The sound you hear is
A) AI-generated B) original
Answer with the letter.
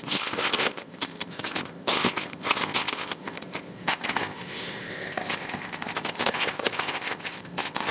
A